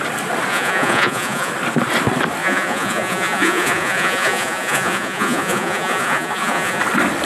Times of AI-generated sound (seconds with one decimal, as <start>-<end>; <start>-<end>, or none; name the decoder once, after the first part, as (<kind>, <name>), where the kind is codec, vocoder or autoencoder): 0.5-1.5 (vocoder, Vocos); 2.4-6.8